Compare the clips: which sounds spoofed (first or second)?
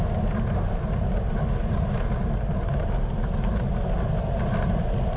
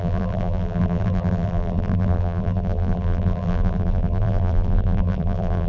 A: second